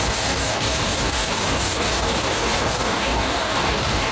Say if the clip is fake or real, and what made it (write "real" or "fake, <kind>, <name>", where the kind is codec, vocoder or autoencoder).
fake, codec, DAC